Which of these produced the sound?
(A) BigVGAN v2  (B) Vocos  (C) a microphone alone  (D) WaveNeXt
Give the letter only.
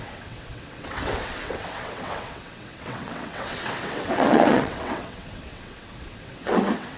D